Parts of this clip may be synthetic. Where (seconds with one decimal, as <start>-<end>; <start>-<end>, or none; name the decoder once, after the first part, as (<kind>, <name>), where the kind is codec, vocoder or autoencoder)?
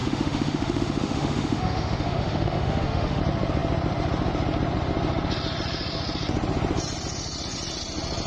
0.0-3.2 (autoencoder, DAC-VAE)